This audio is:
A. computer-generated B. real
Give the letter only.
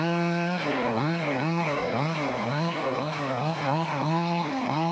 A